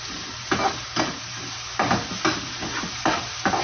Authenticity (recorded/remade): recorded